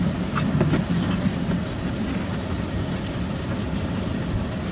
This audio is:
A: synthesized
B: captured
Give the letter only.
B